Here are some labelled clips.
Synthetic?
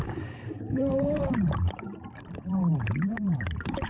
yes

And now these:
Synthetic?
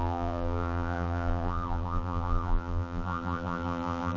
yes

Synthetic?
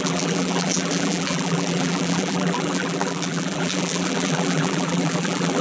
yes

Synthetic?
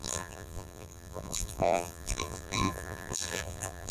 yes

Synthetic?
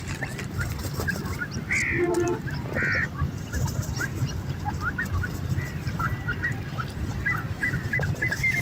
no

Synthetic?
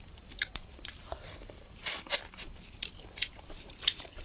yes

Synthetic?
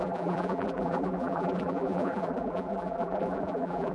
yes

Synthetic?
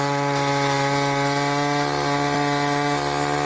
no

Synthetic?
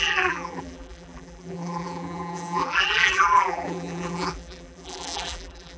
yes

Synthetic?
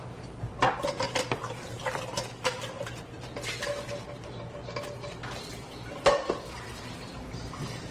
no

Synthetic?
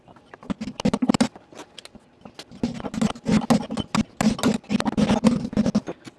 no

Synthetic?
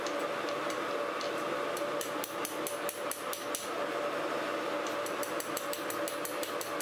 no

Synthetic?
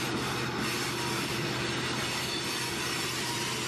no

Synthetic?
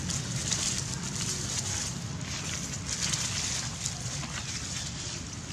no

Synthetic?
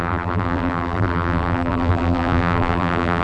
yes